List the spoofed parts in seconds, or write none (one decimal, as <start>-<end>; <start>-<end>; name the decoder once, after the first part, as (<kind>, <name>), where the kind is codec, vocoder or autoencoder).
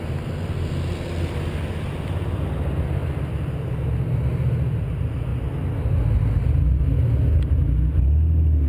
none